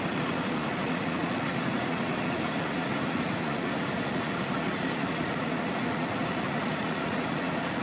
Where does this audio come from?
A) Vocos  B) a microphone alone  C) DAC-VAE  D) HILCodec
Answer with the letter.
A